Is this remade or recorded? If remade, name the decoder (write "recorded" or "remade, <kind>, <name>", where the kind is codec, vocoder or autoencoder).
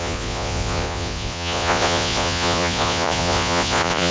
remade, vocoder, Vocos